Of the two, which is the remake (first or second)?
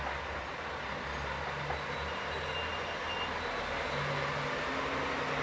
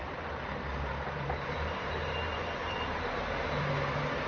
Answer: second